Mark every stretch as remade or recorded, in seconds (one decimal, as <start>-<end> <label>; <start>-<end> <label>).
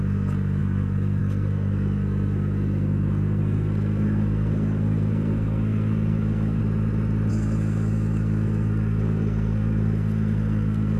0.0-6.6 remade; 6.6-7.3 recorded; 7.3-11.0 remade